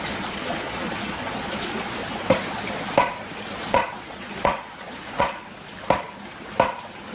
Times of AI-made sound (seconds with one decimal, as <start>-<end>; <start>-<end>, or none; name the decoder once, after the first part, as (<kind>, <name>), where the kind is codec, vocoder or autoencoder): 0.0-2.0 (vocoder, Vocos); 3.6-5.4